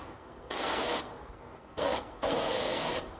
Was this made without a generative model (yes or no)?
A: no